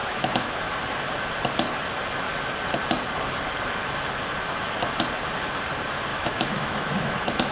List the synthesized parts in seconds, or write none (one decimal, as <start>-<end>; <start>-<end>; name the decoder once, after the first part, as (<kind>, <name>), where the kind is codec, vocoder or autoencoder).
0.0-0.7 (autoencoder, DAC-VAE); 6.1-7.5